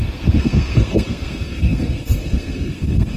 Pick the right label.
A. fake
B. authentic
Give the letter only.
A